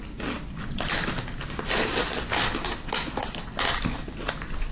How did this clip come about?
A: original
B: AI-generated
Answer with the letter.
A